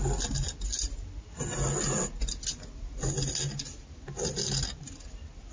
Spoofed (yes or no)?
no